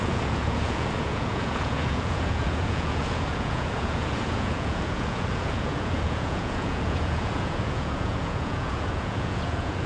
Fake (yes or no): yes